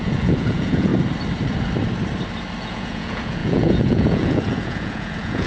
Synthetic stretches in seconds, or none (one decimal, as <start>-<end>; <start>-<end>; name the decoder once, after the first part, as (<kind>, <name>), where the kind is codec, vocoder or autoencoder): 0.0-0.9 (vocoder, Vocos); 2.6-5.5